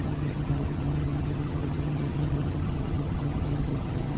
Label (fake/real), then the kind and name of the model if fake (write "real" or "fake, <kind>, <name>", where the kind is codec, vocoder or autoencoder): fake, vocoder, HiFi-GAN